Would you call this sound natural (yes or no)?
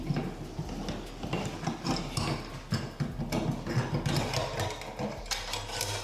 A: yes